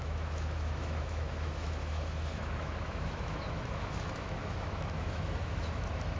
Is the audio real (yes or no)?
no